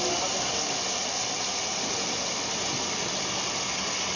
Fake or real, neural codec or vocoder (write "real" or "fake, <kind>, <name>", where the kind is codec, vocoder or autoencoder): real